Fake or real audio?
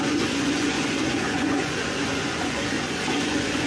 fake